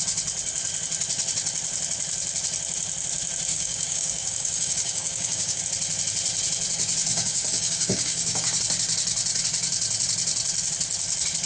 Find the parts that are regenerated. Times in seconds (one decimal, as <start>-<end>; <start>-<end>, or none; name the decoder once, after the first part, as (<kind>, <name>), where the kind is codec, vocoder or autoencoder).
3.5-5.6 (codec, DAC); 7.1-8.6